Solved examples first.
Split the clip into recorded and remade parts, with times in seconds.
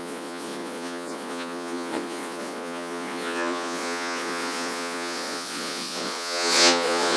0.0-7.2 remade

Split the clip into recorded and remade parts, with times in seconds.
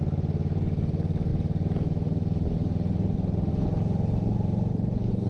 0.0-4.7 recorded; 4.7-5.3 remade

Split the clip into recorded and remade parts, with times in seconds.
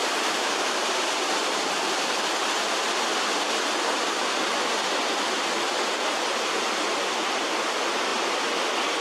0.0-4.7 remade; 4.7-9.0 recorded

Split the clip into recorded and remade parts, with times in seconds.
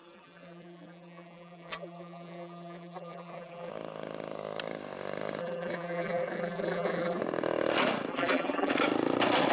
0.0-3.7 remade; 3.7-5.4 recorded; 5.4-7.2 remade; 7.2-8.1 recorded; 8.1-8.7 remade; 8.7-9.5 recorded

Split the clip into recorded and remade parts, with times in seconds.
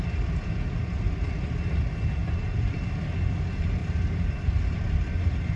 0.0-2.2 recorded; 2.2-2.8 remade; 2.8-5.6 recorded